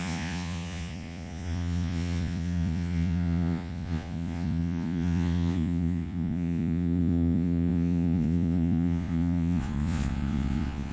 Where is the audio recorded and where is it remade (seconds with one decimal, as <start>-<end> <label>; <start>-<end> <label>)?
0.0-10.9 remade